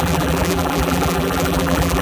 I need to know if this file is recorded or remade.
remade